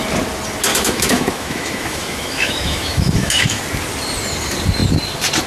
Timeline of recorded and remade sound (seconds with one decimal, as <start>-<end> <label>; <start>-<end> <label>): 0.0-0.7 recorded; 0.7-3.6 remade; 3.6-5.5 recorded